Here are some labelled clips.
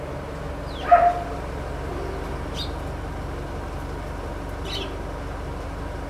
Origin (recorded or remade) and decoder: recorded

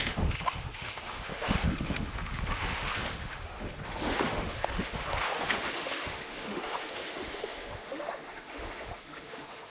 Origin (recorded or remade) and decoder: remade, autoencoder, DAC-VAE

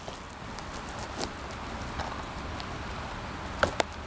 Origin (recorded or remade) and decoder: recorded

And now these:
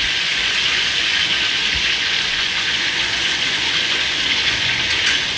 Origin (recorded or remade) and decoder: remade, vocoder, Vocos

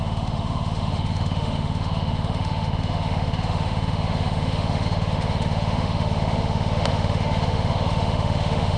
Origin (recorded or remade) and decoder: remade, autoencoder, DAC-VAE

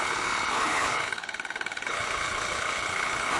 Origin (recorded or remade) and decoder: remade, codec, HILCodec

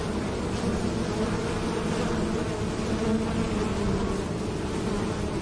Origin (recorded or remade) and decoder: recorded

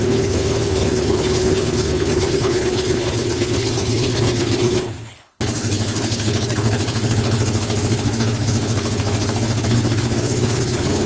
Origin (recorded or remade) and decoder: remade, codec, HILCodec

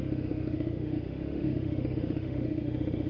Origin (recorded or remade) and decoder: remade, autoencoder, DAC-VAE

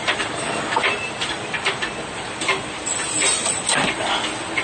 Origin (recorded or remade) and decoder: recorded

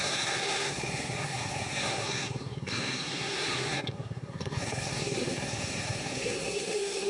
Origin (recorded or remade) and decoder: remade, codec, SNAC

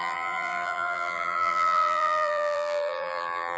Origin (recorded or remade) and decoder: remade, vocoder, BigVGAN v2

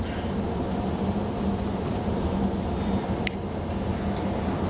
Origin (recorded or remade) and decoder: recorded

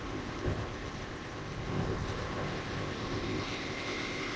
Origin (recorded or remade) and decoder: remade, codec, ZipCodec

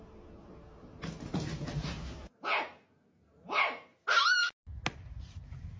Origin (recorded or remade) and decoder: recorded